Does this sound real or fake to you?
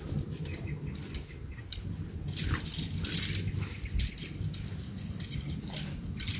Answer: real